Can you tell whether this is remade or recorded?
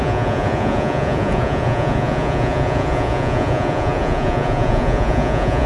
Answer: remade